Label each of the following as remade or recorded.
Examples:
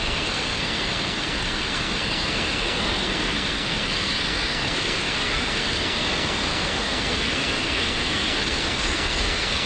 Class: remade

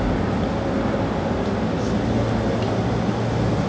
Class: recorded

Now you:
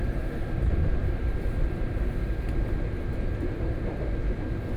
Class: remade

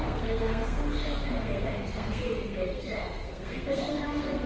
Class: remade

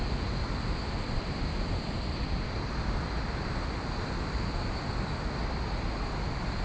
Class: recorded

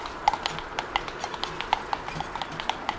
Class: recorded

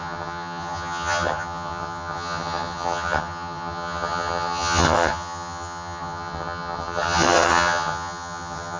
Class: remade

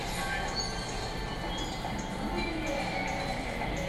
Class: recorded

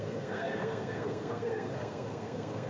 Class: remade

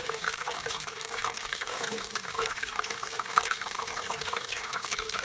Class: remade